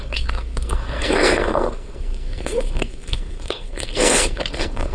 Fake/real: fake